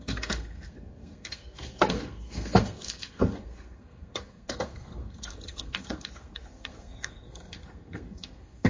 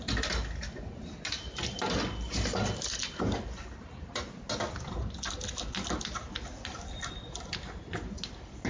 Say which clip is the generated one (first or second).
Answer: first